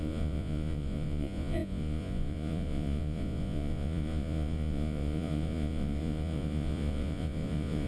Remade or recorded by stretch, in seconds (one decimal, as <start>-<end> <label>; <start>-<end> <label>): 0.0-7.9 remade